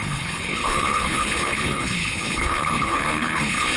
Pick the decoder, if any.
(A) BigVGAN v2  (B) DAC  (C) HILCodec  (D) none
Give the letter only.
C